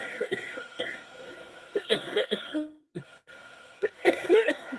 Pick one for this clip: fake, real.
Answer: fake